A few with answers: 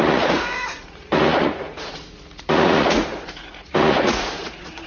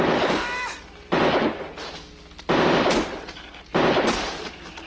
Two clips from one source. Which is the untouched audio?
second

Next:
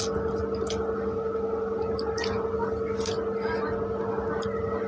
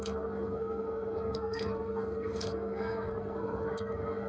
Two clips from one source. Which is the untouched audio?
first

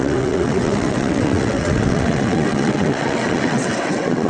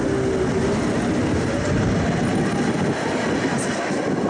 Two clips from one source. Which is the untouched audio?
second